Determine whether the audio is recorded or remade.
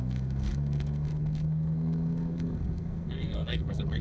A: remade